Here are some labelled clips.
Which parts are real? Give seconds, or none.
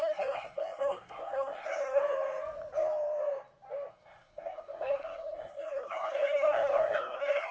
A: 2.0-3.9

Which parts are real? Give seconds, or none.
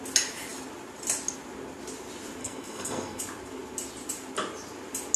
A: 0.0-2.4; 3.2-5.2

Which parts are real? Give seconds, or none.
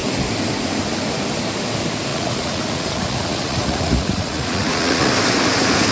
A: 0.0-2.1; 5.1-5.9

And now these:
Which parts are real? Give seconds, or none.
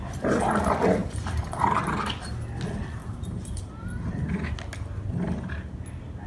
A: 0.0-1.0; 1.6-3.0; 3.7-6.3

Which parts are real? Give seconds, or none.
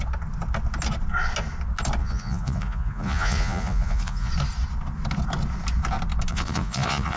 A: 0.0-2.0; 4.3-6.3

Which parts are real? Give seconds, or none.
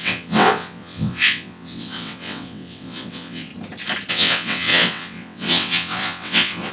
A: 3.5-4.1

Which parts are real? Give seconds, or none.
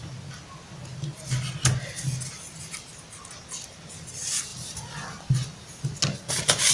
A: 0.0-6.7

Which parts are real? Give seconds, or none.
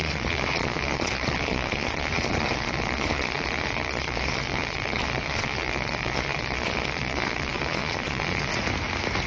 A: 8.5-9.3